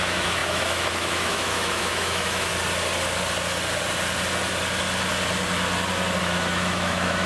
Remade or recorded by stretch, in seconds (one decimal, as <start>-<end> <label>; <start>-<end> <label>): 0.0-2.5 remade; 2.5-6.2 recorded; 6.2-7.3 remade